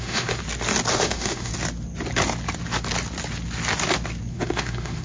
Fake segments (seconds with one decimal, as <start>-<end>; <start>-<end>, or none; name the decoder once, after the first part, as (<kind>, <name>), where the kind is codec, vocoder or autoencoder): 0.0-0.4 (autoencoder, DAC-VAE); 0.9-1.5; 4.3-5.0